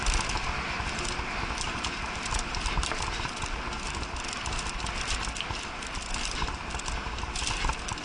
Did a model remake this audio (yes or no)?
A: no